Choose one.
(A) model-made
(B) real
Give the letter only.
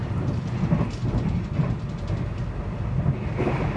B